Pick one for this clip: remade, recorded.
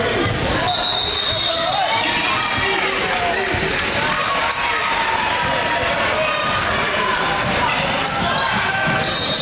recorded